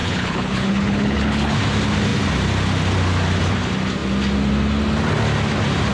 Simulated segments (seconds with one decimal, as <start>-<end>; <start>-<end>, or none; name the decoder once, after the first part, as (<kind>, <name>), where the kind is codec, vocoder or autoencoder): 0.0-1.6 (codec, HILCodec)